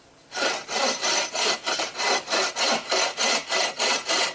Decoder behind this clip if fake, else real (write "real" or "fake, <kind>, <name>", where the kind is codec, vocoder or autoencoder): real